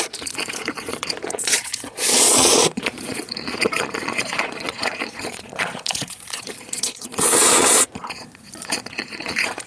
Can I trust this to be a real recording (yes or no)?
no